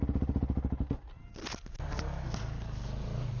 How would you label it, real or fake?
real